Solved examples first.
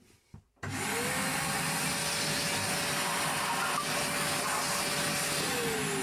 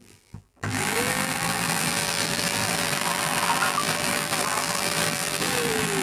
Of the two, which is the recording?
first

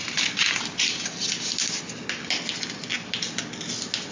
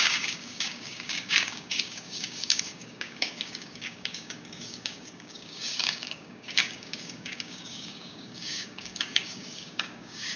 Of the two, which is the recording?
first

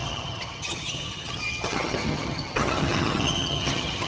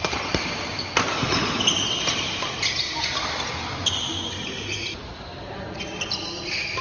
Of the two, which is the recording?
second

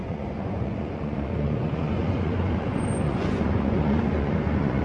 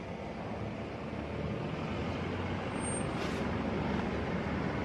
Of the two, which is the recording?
second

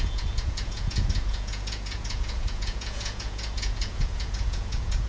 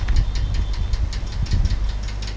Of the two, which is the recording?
second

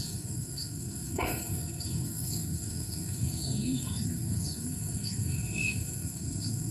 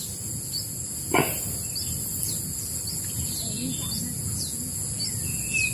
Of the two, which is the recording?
second